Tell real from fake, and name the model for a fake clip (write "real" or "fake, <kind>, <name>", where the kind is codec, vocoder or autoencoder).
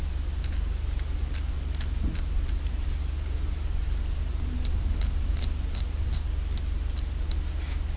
real